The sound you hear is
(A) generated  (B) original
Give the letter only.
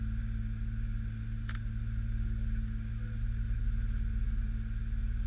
B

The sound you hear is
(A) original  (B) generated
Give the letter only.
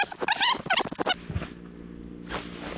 A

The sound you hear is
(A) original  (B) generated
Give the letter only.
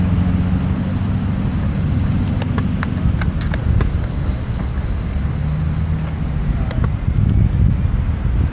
A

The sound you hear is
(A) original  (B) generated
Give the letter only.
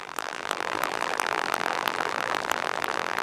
B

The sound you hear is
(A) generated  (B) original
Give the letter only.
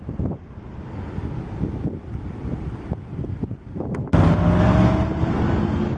B